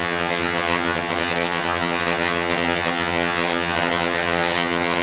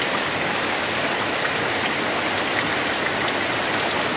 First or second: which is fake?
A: first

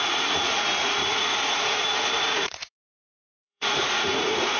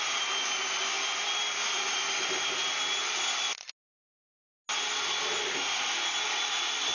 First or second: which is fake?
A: first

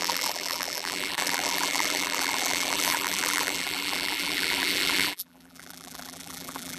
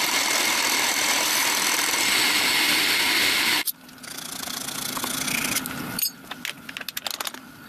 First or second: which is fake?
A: first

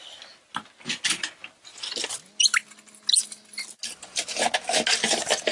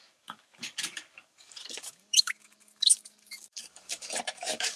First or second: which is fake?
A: second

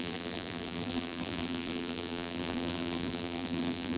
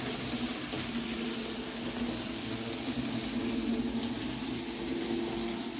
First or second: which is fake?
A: first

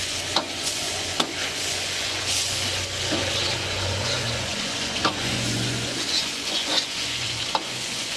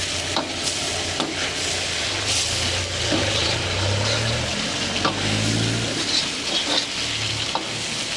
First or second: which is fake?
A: first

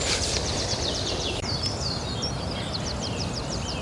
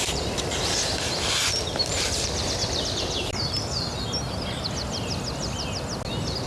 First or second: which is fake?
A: first